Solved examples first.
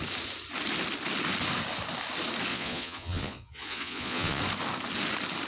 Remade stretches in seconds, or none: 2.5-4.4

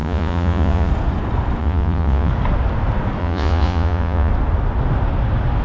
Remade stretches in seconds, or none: 0.0-0.9; 1.6-2.3; 3.2-4.3